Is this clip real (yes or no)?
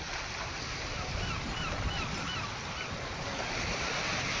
yes